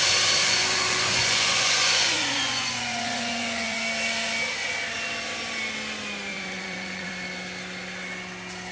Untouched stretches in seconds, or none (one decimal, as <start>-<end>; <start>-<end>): 0.0-0.4; 3.8-6.3; 7.1-8.7